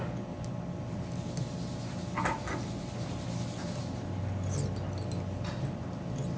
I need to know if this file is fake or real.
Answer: real